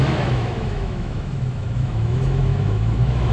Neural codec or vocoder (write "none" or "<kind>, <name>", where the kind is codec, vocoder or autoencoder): autoencoder, DAC-VAE